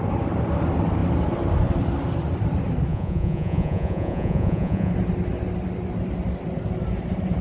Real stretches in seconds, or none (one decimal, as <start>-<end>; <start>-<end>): 0.0-2.9; 4.9-7.4